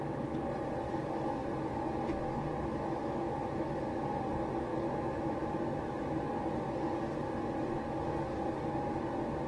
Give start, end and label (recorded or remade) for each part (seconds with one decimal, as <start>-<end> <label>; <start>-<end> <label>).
0.0-3.0 recorded; 3.0-3.8 remade; 3.8-4.7 recorded; 4.7-6.1 remade; 6.1-9.5 recorded